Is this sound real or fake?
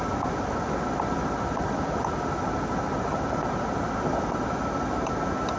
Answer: real